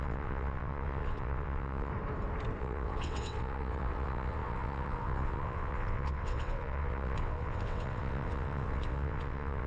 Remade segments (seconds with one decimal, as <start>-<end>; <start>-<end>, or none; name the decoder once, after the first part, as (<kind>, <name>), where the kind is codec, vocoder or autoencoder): 0.0-1.9 (vocoder, WaveNeXt); 2.6-9.7

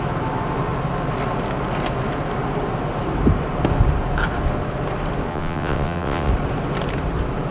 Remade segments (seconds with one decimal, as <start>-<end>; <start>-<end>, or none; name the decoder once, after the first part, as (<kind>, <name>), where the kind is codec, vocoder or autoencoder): 5.3-6.3 (vocoder, WaveNeXt)

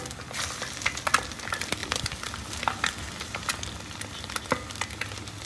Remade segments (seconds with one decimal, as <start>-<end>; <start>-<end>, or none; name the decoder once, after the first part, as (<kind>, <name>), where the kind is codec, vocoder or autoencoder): none

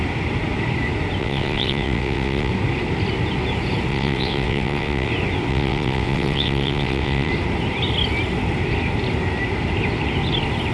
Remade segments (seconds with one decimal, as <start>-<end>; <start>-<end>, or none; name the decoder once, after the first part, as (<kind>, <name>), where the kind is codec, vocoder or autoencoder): 1.2-2.5 (vocoder, WaveNeXt); 3.9-5.1; 5.5-7.3

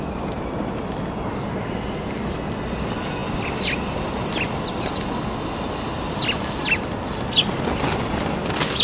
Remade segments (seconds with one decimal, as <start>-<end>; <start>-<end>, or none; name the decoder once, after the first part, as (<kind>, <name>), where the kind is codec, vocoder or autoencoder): none